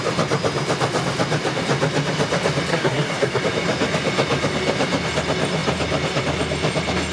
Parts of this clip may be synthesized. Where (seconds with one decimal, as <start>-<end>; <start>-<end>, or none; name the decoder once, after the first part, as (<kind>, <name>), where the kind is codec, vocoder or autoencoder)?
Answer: 2.7-3.4 (codec, SNAC)